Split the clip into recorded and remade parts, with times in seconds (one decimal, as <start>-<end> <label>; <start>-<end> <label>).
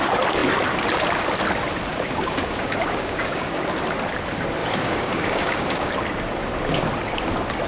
0.0-1.9 recorded; 1.9-3.6 remade; 3.6-4.6 recorded; 4.6-5.9 remade; 5.9-7.7 recorded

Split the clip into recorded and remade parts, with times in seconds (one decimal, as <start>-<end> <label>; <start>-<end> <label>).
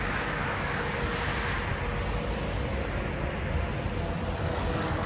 0.0-1.3 remade; 1.3-4.4 recorded; 4.4-5.1 remade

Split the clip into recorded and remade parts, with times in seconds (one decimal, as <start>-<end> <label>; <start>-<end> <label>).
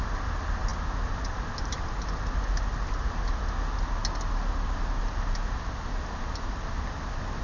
0.0-2.7 recorded; 2.7-3.4 remade; 3.4-7.4 recorded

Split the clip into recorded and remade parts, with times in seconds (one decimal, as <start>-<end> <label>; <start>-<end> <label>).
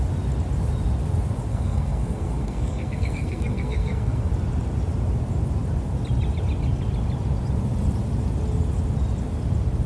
0.0-1.5 recorded; 1.5-4.3 remade; 4.3-9.9 recorded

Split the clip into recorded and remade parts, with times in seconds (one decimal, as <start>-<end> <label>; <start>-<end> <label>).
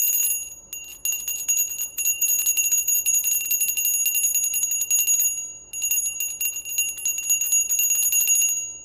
0.0-1.3 recorded; 1.3-3.7 remade; 3.7-8.8 recorded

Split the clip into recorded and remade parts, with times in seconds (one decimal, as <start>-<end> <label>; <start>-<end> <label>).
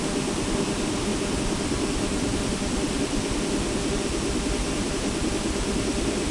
0.0-6.3 recorded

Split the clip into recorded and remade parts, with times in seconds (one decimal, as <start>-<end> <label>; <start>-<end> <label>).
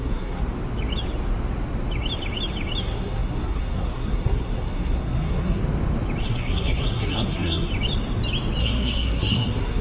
0.0-0.4 remade; 0.4-2.8 recorded; 2.8-5.6 remade; 5.6-6.2 recorded; 6.2-7.7 remade; 7.7-8.6 recorded; 8.6-9.8 remade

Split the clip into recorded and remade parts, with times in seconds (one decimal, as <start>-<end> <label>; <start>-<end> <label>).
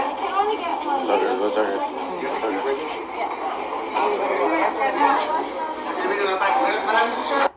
0.0-7.6 recorded